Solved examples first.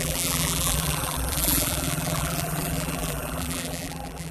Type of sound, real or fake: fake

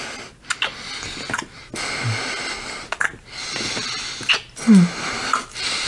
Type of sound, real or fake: real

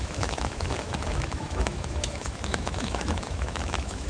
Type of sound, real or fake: fake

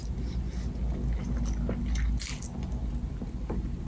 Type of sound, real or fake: real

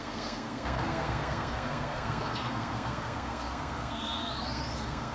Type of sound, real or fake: fake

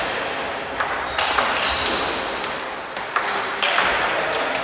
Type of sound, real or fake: fake